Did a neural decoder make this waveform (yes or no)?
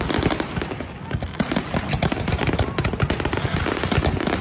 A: no